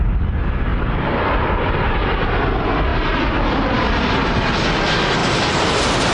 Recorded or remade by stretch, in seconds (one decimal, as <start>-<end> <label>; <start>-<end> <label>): 0.0-0.7 recorded; 0.7-1.2 remade; 1.2-5.2 recorded; 5.2-6.1 remade